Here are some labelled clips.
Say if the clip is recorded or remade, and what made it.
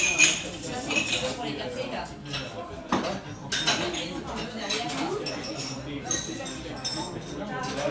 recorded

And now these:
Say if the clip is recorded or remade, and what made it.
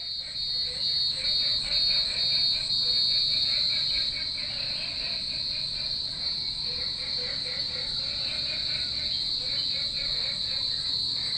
recorded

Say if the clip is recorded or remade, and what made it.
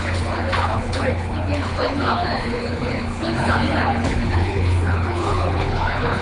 remade, codec, HILCodec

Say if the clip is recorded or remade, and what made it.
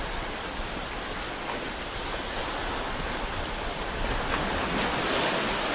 recorded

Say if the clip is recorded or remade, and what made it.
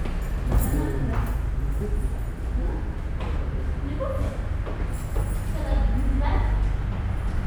recorded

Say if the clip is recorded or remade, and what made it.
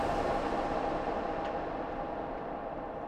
recorded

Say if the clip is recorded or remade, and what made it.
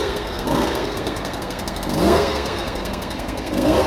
remade, codec, SNAC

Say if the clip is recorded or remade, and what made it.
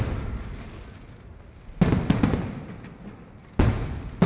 recorded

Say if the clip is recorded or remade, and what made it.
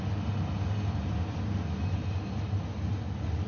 recorded